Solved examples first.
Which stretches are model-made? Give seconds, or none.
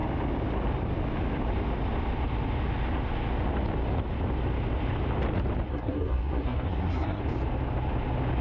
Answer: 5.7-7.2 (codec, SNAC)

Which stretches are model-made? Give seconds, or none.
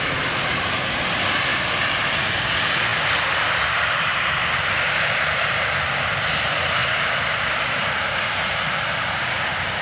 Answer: 0.0-1.5 (vocoder, BigVGAN v2); 2.1-9.8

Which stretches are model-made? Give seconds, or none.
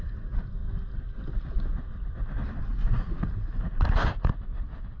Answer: none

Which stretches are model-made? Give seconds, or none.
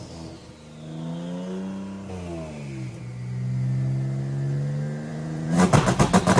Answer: 5.1-6.0 (vocoder, BigVGAN v2)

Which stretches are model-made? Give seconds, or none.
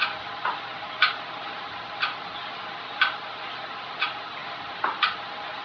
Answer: none